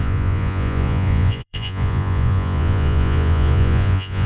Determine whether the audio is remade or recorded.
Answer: remade